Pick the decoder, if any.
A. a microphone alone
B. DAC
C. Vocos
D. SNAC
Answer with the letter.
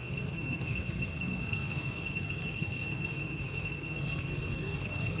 D